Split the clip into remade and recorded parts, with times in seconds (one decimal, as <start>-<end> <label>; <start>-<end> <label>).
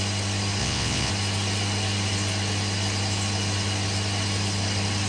0.0-0.6 recorded; 0.6-1.1 remade; 1.1-5.1 recorded